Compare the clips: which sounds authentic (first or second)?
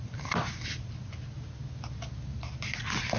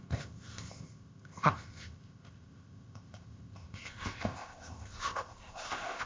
first